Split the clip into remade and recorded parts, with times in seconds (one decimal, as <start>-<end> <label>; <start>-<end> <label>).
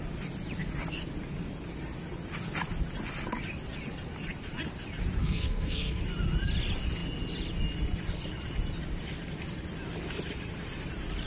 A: 0.0-5.2 recorded; 5.2-6.0 remade; 6.0-11.3 recorded